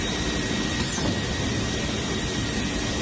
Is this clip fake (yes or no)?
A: yes